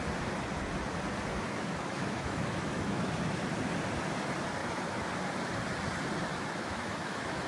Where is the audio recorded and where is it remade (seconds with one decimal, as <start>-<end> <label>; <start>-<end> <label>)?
0.0-1.3 recorded; 1.3-3.1 remade; 3.1-4.6 recorded; 4.6-5.1 remade; 5.1-6.3 recorded; 6.3-7.5 remade